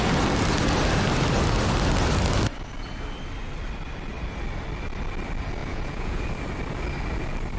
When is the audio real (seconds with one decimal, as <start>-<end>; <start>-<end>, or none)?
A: 0.0-5.6; 6.2-7.6